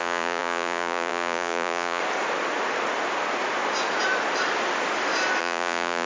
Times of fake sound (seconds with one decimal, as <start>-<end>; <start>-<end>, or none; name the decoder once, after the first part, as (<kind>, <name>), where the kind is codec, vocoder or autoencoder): 0.0-2.0 (vocoder, Vocos); 5.4-6.1